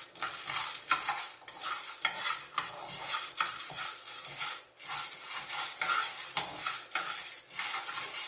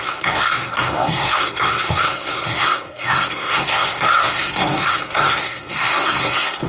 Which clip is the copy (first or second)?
second